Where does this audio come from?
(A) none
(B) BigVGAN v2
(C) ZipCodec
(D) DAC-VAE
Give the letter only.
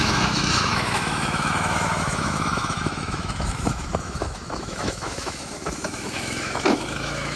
D